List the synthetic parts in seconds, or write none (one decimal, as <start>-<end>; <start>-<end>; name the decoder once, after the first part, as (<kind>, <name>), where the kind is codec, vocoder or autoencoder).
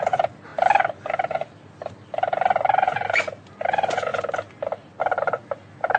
none